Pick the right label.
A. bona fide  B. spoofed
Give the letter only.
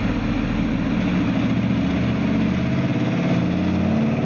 A